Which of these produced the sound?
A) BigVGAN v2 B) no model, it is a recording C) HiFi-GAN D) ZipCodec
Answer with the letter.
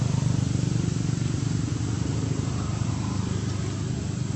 B